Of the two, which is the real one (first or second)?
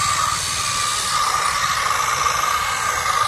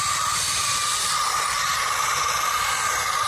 first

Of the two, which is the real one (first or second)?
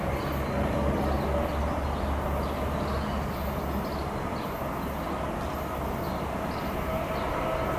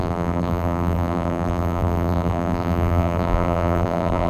first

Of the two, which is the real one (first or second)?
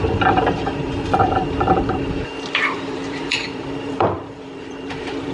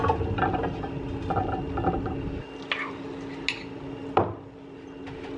second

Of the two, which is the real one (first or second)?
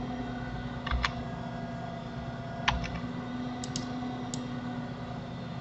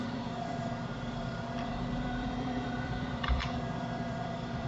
first